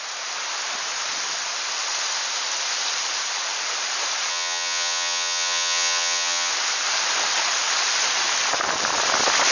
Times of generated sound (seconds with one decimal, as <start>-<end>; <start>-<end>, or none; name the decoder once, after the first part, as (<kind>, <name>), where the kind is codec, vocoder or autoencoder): 4.3-6.5 (vocoder, HiFi-GAN)